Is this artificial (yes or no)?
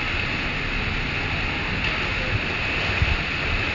no